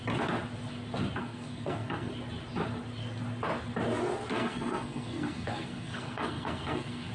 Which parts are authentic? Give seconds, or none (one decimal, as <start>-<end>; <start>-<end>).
0.0-1.2; 2.1-4.3